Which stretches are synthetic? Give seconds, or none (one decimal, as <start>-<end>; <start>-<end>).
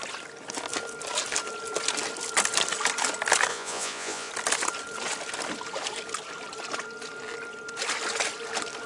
3.5-4.3